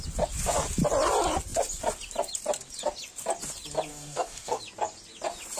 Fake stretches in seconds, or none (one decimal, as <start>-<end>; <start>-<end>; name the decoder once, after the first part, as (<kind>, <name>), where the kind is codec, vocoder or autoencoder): 3.9-4.6 (codec, DAC)